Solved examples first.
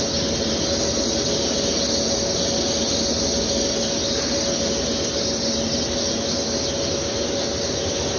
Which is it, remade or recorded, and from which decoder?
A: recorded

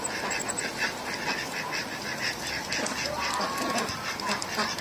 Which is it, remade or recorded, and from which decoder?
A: recorded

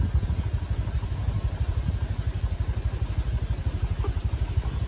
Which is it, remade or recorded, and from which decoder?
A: recorded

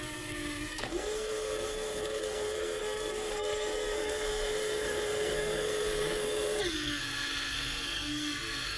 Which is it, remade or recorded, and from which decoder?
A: remade, codec, SNAC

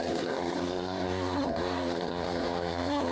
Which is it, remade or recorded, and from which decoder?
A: remade, codec, SNAC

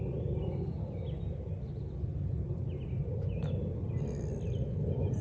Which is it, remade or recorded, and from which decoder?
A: recorded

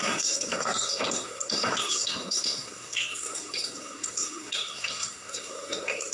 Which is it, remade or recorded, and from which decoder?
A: remade, codec, SNAC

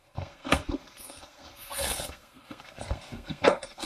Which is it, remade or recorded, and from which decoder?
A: remade, codec, SNAC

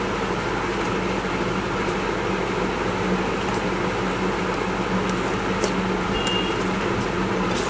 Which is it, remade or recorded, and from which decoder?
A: recorded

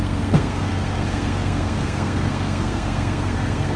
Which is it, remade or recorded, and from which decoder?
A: remade, codec, SNAC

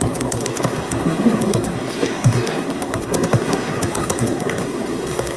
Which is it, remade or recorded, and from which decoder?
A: remade, codec, SNAC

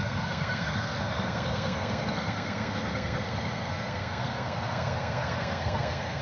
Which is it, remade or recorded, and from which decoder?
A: remade, codec, SNAC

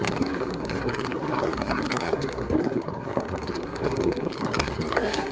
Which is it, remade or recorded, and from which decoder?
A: remade, codec, SNAC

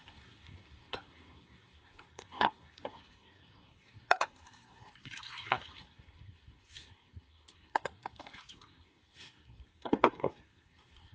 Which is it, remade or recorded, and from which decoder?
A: remade, codec, SNAC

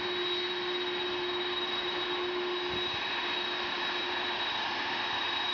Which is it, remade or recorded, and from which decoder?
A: recorded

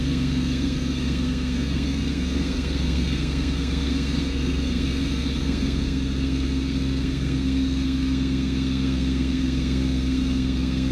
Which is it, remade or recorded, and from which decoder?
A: remade, codec, SNAC